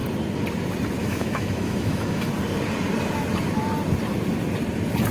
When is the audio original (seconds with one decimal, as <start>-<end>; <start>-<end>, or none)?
0.0-1.0; 2.3-5.1